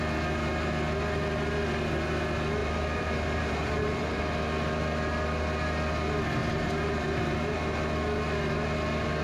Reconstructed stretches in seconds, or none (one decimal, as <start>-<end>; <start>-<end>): 2.6-4.2; 6.4-7.6